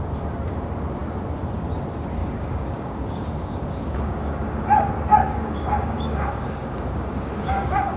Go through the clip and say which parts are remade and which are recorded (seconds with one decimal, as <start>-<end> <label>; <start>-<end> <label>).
0.0-2.2 recorded; 2.2-4.6 remade; 4.6-5.2 recorded; 5.2-8.0 remade